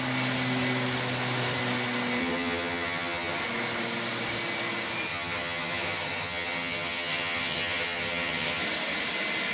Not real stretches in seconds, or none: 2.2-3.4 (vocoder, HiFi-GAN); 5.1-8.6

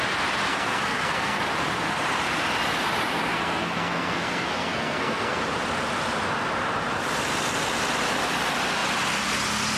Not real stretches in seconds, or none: 0.5-1.4 (codec, SNAC); 3.3-5.4

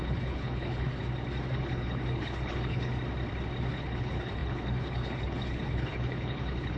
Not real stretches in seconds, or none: 0.0-0.9 (codec, HILCodec); 1.5-2.9; 3.7-6.8